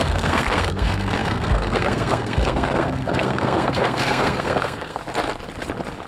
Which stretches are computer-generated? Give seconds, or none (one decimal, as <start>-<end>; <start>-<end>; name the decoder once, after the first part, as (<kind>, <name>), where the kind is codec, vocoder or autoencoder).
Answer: 0.0-5.0 (codec, SNAC)